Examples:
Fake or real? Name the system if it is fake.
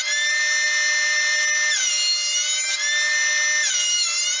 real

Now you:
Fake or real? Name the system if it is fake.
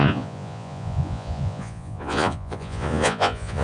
fake, vocoder, Vocos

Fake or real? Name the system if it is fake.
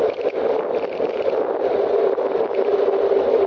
real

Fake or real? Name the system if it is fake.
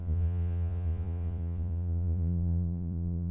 fake, vocoder, Vocos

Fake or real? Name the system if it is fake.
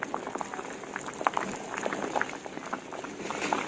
real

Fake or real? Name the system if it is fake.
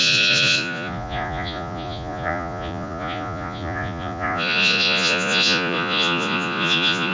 fake, vocoder, Vocos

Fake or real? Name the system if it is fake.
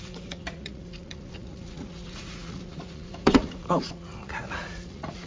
fake, vocoder, Vocos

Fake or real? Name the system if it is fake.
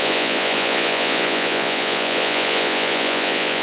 fake, vocoder, Vocos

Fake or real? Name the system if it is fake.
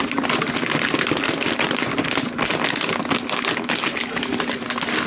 real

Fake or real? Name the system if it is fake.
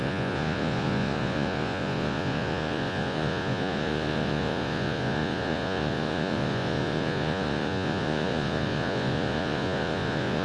fake, vocoder, Vocos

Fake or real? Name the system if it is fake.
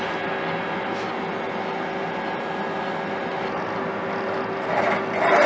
real